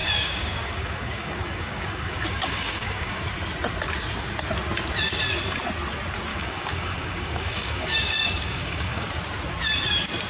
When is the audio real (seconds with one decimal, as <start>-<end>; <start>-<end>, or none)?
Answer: 3.2-6.3; 9.1-10.3